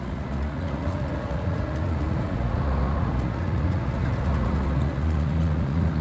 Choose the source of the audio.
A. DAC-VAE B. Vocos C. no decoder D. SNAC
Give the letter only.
B